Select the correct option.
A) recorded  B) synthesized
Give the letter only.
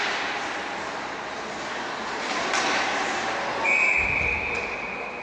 A